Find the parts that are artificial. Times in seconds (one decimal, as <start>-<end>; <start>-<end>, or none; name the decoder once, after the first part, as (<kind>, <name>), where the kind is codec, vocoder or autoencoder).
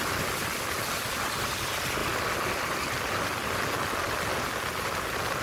none